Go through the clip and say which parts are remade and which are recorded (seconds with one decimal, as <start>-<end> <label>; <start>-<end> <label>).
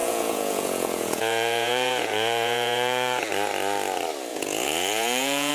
0.0-3.3 remade; 3.3-4.3 recorded; 4.3-5.5 remade